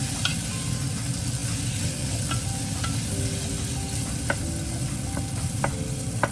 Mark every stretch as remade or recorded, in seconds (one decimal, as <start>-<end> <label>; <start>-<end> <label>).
0.0-6.3 recorded